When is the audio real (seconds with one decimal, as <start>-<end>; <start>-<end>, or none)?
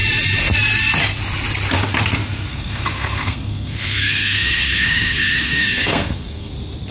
0.0-2.5; 6.5-6.9